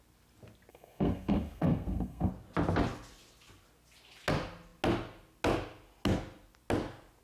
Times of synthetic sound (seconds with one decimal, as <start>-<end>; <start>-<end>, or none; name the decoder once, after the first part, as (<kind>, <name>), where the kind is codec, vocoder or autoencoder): 0.7-2.3 (codec, SNAC)